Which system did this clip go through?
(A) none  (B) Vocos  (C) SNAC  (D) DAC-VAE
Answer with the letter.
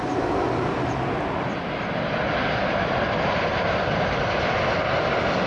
A